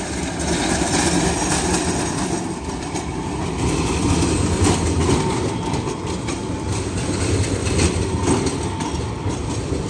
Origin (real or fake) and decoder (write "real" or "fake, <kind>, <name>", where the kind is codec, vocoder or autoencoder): real